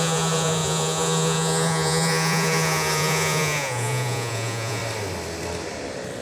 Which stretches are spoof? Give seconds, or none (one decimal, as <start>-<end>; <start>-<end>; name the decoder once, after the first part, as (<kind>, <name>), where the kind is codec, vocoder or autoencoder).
0.0-4.8 (vocoder, Vocos)